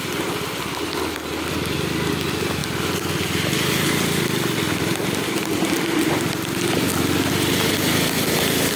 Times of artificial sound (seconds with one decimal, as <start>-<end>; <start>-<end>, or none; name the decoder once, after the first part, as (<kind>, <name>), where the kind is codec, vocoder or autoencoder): none